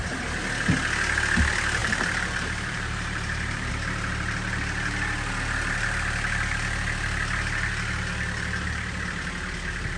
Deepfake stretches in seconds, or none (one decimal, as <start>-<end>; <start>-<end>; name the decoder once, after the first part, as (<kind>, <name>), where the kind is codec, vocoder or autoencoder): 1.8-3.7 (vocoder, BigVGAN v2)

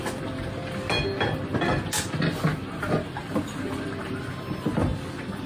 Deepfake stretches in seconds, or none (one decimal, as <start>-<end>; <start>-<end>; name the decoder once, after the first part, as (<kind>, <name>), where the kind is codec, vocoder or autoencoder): 3.2-4.2 (vocoder, BigVGAN v2)

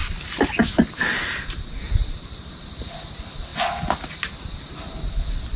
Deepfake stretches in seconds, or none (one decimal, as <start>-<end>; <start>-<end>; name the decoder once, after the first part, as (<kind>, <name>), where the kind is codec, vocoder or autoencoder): none

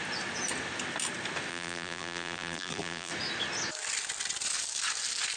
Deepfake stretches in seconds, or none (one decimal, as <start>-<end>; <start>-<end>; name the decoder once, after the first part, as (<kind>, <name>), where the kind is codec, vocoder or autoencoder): 1.5-3.1 (vocoder, BigVGAN v2)

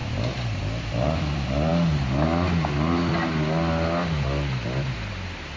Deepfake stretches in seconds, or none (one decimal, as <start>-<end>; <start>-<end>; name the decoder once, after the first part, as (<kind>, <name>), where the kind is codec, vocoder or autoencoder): 0.6-1.7 (vocoder, BigVGAN v2); 5.1-5.6